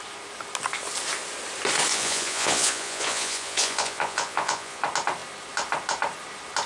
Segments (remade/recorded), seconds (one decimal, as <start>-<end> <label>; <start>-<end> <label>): 0.0-1.9 recorded; 1.9-4.8 remade; 4.8-6.7 recorded